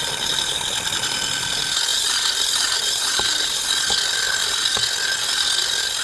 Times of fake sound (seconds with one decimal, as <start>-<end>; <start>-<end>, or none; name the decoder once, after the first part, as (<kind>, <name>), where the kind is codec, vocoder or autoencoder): 1.9-3.6 (vocoder, BigVGAN v2)